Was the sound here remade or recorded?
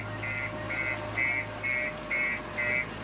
recorded